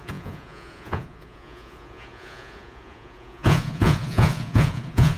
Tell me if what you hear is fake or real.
fake